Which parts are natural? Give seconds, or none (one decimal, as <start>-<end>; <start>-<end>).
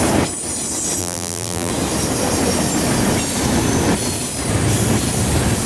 0.0-1.0; 1.7-5.7